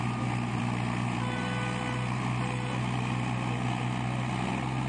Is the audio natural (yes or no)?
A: yes